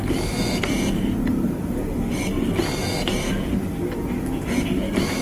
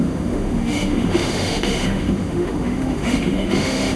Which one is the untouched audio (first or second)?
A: first